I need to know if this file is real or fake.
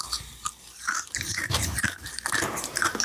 fake